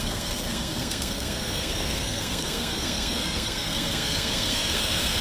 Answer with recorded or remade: remade